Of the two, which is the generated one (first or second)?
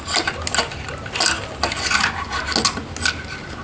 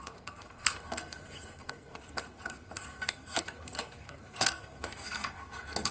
second